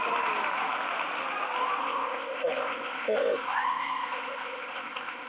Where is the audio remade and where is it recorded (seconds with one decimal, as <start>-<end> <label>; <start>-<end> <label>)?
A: 0.0-1.8 recorded; 1.8-5.3 remade